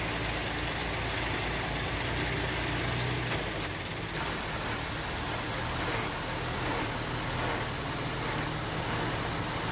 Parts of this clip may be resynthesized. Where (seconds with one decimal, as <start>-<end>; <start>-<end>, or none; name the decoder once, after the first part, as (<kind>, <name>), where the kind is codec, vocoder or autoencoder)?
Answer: none